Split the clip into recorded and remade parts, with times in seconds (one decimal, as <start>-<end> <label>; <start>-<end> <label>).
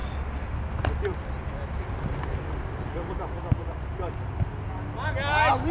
0.0-5.7 recorded